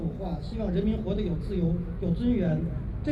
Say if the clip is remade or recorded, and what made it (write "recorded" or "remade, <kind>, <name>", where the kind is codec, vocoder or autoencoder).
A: recorded